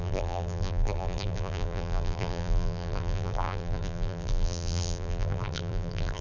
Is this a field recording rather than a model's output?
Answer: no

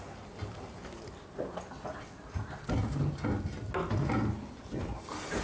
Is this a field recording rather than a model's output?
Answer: yes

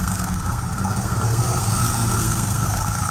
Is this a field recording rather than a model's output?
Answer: no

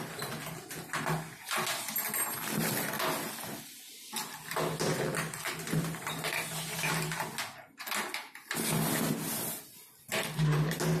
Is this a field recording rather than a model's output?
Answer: yes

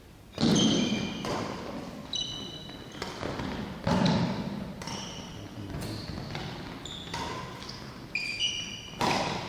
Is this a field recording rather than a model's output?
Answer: yes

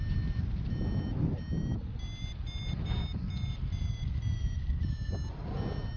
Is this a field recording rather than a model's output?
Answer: yes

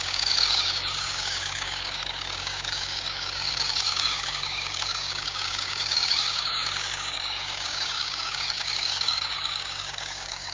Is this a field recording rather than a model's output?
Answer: no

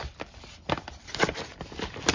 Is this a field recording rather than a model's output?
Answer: yes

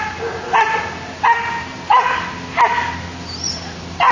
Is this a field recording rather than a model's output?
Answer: yes